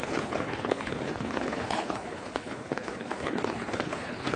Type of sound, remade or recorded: remade